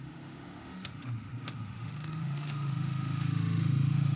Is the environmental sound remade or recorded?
remade